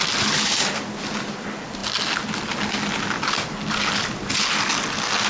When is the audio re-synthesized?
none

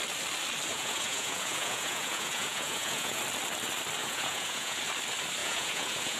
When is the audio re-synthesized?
0.7-3.2 (vocoder, Vocos); 4.0-4.8; 5.4-6.2

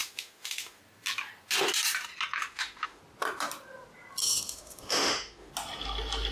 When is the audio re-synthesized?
0.0-0.8 (autoencoder, DAC-VAE); 2.4-3.0; 4.2-5.5